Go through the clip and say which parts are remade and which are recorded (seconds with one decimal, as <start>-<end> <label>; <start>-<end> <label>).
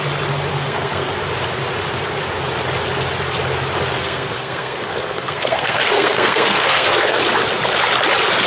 0.0-0.5 recorded; 0.5-1.1 remade; 1.1-4.0 recorded; 4.0-7.2 remade; 7.2-8.5 recorded